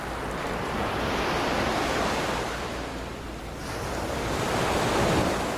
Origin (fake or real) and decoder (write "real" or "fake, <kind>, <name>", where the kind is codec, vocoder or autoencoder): real